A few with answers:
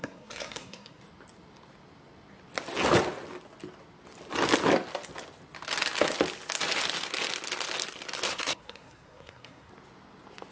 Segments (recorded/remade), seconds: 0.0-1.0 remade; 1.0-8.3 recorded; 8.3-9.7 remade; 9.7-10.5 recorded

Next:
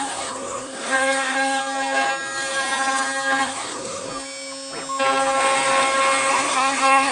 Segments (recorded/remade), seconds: 0.0-1.6 remade; 1.6-3.4 recorded; 3.4-4.1 remade; 4.1-6.3 recorded; 6.3-7.1 remade

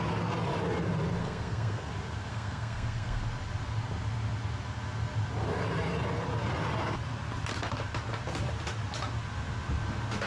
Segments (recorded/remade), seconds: 0.0-1.2 recorded; 1.2-1.9 remade; 1.9-2.3 recorded; 2.3-3.2 remade; 3.2-10.3 recorded

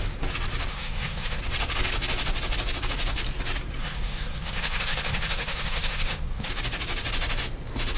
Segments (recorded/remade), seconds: 0.0-0.7 recorded; 0.7-1.4 remade; 1.4-3.8 recorded; 3.8-6.5 remade; 6.5-8.0 recorded

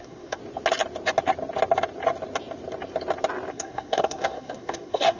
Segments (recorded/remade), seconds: 0.0-0.4 remade; 0.4-3.5 recorded; 3.5-5.2 remade